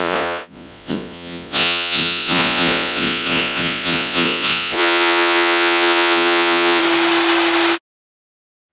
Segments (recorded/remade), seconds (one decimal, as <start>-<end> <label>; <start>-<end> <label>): 0.0-6.8 remade; 6.8-8.7 recorded